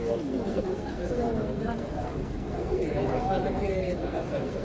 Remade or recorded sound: remade